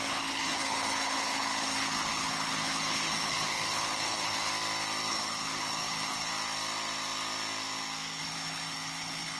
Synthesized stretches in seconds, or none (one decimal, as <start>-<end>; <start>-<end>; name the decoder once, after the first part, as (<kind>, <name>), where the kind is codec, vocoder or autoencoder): 0.0-4.5 (codec, HILCodec); 5.1-6.3; 8.2-9.4